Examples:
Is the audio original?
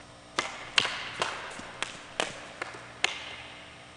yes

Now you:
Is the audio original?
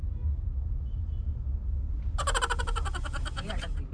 yes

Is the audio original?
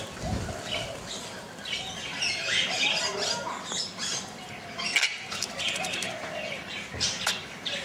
yes